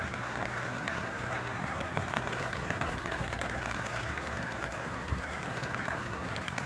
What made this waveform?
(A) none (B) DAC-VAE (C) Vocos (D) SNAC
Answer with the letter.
D